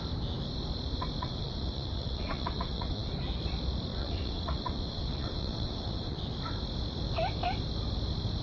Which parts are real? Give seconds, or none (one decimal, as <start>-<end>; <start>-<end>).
0.0-1.2; 3.1-3.9; 6.2-8.4